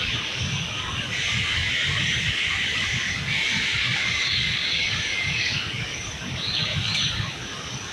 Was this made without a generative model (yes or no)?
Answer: no